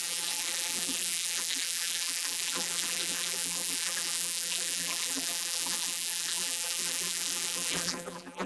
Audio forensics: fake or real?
fake